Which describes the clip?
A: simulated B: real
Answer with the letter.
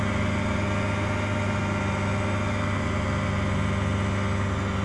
B